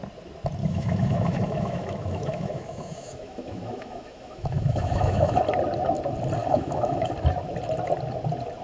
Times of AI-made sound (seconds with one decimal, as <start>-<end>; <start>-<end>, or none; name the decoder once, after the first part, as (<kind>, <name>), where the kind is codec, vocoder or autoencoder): 0.6-5.4 (autoencoder, DAC-VAE); 6.4-7.1

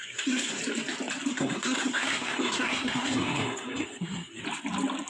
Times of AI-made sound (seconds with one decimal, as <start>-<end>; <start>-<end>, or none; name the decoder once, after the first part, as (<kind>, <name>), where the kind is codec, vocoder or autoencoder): 0.0-0.6 (codec, SNAC); 1.3-4.4